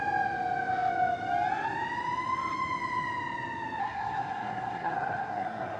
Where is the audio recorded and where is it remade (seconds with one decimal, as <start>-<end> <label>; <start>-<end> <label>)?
0.0-3.8 recorded; 3.8-5.8 remade